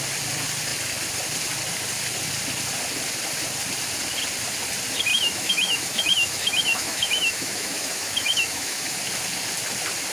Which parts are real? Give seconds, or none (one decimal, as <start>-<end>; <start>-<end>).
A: 0.0-5.1; 9.0-10.1